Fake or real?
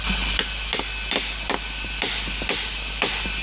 real